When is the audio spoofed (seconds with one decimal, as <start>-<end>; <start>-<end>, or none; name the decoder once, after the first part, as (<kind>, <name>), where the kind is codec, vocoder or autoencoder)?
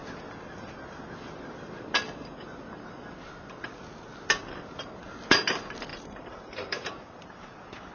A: 5.9-7.9 (vocoder, BigVGAN v2)